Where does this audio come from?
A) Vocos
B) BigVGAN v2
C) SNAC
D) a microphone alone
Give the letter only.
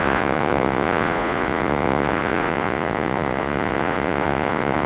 A